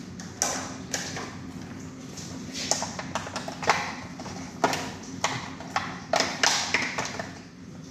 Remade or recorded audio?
recorded